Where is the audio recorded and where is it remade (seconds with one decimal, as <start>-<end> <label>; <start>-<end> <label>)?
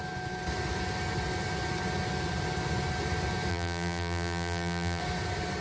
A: 0.0-3.5 recorded; 3.5-5.0 remade; 5.0-5.6 recorded